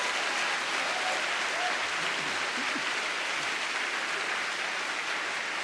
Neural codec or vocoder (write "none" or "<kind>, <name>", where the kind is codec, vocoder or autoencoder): none